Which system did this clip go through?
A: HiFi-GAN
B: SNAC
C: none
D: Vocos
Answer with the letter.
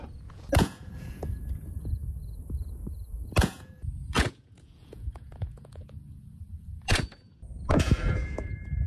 D